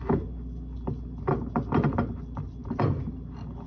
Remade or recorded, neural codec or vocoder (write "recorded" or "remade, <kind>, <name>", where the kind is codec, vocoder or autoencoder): recorded